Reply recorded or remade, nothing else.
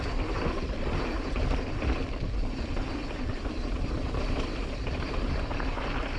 remade